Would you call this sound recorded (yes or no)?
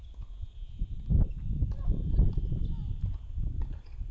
yes